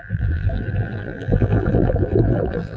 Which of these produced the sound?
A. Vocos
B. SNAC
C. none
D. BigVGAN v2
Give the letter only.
D